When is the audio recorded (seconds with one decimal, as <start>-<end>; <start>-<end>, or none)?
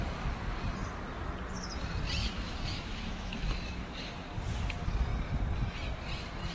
0.0-2.2; 4.1-6.5